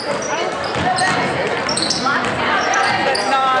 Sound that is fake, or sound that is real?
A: fake